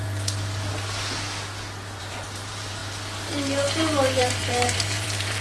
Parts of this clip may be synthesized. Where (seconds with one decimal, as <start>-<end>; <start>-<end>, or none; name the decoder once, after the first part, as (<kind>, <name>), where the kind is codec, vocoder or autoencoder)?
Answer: 2.0-2.8 (vocoder, BigVGAN v2); 4.2-5.4